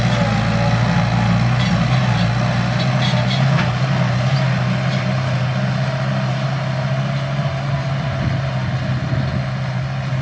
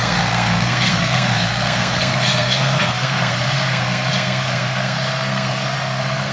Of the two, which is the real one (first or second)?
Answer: first